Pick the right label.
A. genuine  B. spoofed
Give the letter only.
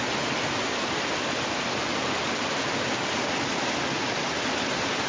A